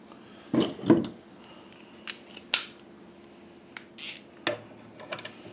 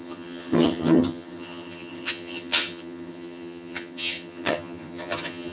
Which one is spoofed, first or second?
second